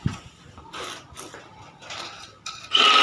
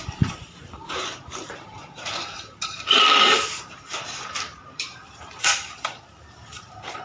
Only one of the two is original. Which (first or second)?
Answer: first